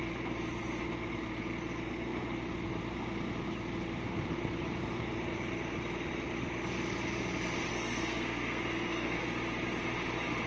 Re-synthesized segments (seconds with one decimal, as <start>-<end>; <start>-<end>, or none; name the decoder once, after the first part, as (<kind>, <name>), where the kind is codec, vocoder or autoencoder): 7.7-9.2 (codec, SNAC)